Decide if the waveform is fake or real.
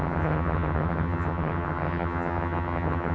fake